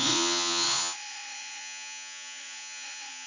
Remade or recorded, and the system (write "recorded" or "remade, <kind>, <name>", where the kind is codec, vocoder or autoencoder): remade, vocoder, Vocos